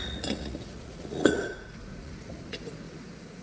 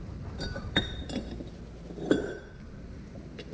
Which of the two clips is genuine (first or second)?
second